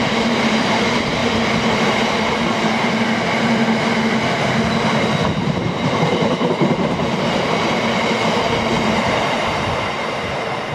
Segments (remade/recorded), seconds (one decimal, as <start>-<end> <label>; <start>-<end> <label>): 0.0-1.2 remade; 1.2-5.3 recorded; 5.3-10.7 remade